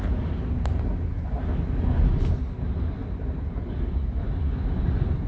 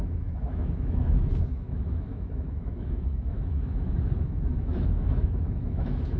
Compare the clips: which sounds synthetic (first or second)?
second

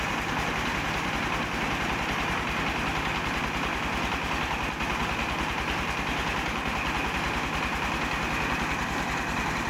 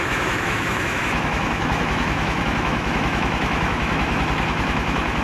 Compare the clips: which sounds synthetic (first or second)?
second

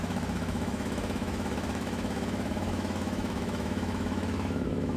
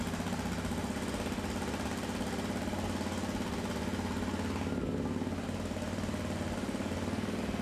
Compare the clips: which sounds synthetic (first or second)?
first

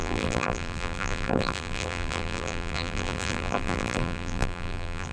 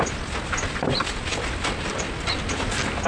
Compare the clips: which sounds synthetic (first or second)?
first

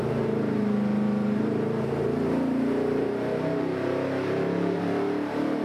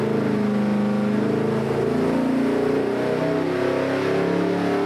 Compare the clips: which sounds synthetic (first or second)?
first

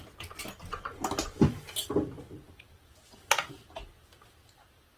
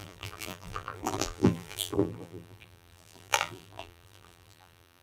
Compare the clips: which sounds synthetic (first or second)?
second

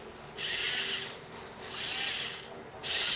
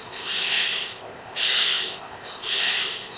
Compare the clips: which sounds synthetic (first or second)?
second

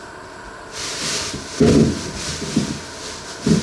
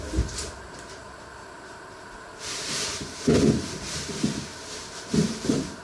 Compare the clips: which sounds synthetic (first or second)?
second